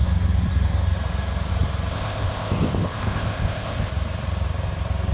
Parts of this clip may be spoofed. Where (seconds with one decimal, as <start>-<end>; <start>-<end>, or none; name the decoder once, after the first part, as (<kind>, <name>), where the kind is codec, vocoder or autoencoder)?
1.9-3.9 (codec, ZipCodec)